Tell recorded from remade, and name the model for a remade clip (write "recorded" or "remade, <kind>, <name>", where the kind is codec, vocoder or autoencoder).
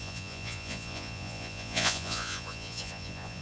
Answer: remade, vocoder, Vocos